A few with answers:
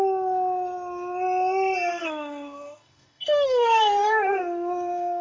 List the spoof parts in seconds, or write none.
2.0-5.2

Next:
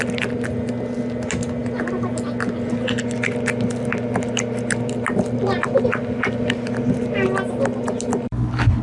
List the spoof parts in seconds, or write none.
none

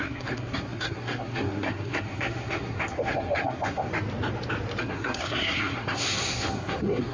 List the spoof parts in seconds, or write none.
0.0-3.9; 4.8-7.1

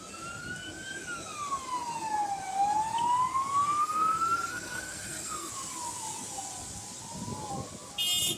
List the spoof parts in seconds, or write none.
3.8-5.5

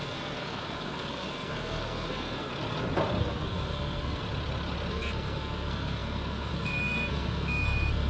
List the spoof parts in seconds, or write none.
0.0-2.5; 3.2-4.2; 4.9-8.1